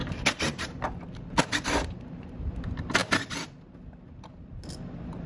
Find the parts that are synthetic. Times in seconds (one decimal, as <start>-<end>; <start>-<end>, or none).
none